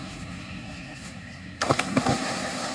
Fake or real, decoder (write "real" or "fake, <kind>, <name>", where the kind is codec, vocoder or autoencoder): fake, codec, SNAC